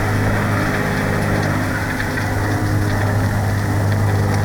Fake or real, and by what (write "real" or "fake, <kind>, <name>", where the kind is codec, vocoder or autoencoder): real